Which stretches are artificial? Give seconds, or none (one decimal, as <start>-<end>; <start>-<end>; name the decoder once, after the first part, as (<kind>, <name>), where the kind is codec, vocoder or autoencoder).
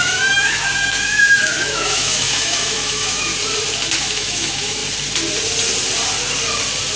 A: 0.0-3.3 (autoencoder, DAC-VAE); 4.0-4.8